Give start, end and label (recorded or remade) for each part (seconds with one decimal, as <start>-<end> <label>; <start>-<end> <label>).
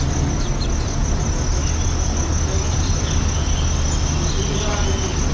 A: 0.0-5.3 recorded